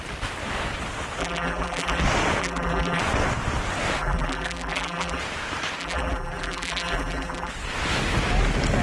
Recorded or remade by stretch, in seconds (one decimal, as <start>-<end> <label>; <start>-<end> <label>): 0.0-1.2 recorded; 1.2-2.0 remade; 2.0-2.4 recorded; 2.4-3.0 remade; 3.0-4.0 recorded; 4.0-5.2 remade; 5.2-5.8 recorded; 5.8-7.5 remade; 7.5-8.8 recorded